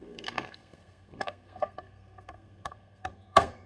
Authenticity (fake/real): fake